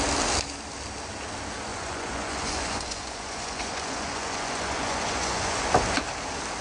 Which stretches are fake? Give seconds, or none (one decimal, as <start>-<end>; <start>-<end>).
1.7-5.7